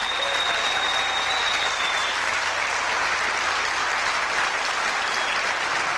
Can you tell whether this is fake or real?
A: real